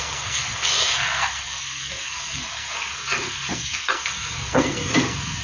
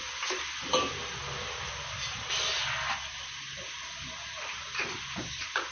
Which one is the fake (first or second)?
first